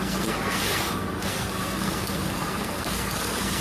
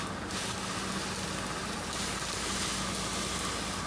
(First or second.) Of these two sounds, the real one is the second